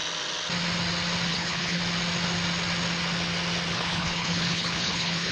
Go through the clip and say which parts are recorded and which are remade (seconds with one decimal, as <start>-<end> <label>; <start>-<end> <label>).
0.0-1.3 recorded; 1.3-1.8 remade; 1.8-3.7 recorded; 3.7-5.3 remade